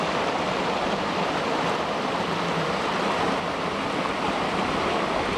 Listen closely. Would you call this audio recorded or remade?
recorded